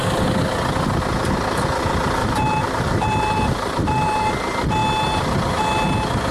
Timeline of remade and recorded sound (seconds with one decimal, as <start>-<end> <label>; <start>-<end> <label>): 0.0-2.2 recorded; 2.2-4.3 remade; 4.3-6.3 recorded